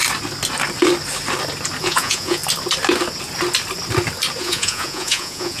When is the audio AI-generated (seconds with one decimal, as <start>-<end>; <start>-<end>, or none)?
1.8-2.4; 4.4-5.6